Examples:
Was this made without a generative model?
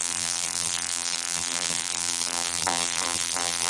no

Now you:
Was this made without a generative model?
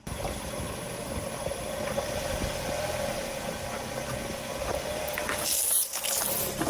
yes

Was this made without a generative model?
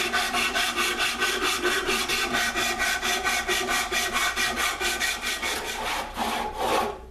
no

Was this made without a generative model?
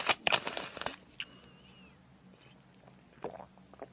yes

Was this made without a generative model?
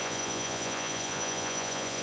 no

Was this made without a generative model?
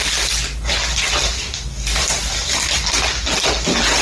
yes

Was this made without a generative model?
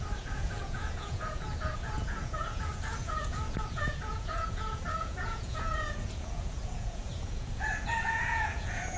no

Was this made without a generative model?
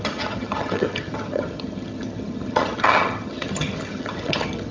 no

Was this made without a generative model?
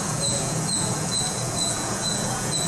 no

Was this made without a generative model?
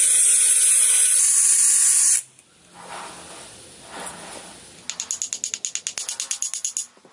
yes